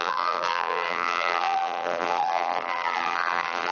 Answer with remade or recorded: remade